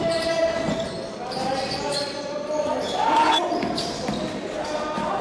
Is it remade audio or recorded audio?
recorded